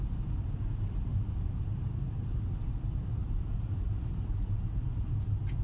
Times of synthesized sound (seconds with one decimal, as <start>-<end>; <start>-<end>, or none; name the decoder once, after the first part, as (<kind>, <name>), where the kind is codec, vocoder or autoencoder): 1.1-2.5 (vocoder, BigVGAN v2)